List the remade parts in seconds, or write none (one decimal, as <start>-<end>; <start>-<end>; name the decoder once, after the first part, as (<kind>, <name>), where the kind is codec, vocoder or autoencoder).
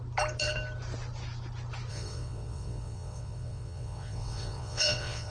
1.9-5.3 (vocoder, WaveNeXt)